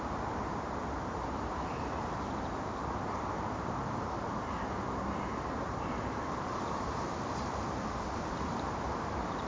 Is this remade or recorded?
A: remade